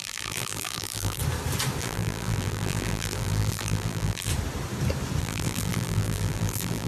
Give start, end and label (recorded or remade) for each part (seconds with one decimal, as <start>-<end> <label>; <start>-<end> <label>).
0.0-1.2 remade; 1.2-1.8 recorded; 1.8-4.3 remade; 4.3-5.2 recorded; 5.2-6.9 remade